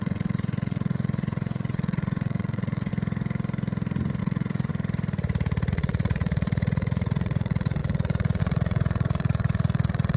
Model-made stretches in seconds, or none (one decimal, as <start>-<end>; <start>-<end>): 0.0-2.9; 4.2-4.7; 5.7-10.2